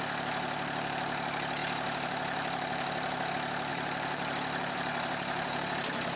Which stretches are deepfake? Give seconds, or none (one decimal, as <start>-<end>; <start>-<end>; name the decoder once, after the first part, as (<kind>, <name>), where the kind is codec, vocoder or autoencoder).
1.6-3.3 (vocoder, BigVGAN v2); 3.7-6.2